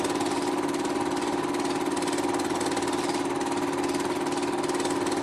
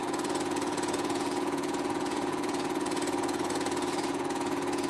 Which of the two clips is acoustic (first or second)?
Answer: first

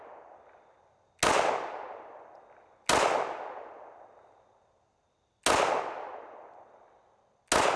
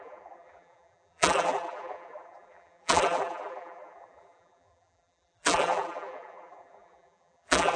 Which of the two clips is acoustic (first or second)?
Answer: first